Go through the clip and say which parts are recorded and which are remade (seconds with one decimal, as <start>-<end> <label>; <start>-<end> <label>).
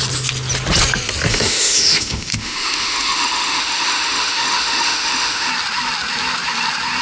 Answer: 0.0-1.3 recorded; 1.3-5.5 remade; 5.5-7.0 recorded